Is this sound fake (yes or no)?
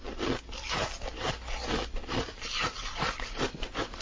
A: no